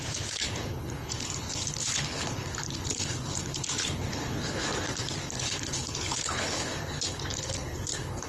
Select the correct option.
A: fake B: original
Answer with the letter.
A